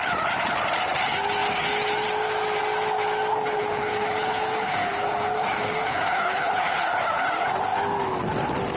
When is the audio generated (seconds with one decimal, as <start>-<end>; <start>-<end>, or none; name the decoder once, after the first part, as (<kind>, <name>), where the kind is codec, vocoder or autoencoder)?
3.3-7.0 (codec, HILCodec)